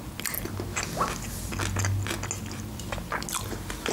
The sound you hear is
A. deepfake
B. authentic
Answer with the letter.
B